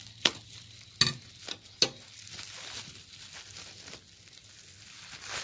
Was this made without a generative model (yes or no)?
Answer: yes